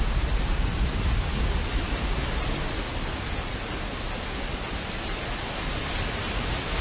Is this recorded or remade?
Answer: recorded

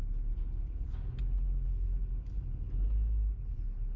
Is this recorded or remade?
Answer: recorded